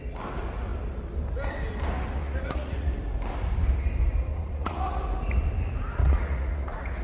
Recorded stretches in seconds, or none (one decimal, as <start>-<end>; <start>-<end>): 0.0-2.2; 2.9-4.3; 5.0-6.0